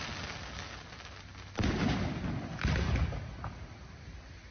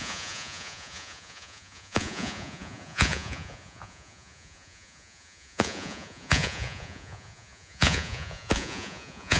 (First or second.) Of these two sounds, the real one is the first